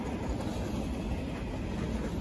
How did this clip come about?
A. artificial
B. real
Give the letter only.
B